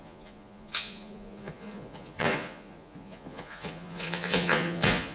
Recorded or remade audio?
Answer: remade